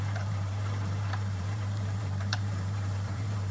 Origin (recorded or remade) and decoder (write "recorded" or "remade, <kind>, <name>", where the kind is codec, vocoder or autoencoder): remade, vocoder, BigVGAN v2